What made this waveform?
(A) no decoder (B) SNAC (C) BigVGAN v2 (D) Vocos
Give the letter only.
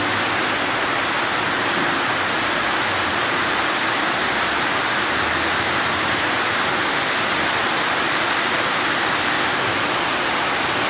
A